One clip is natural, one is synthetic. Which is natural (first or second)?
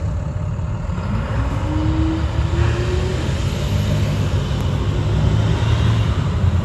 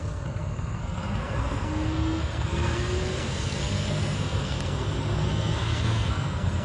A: first